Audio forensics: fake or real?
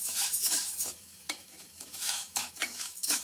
fake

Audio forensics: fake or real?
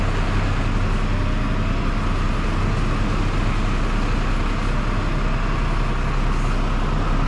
real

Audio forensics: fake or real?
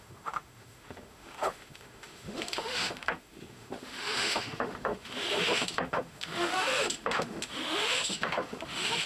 fake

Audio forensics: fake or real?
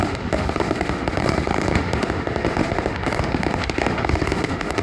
fake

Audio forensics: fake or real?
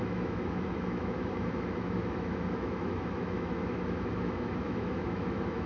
fake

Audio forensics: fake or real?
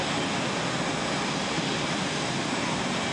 real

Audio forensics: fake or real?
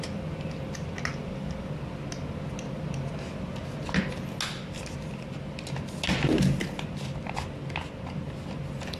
real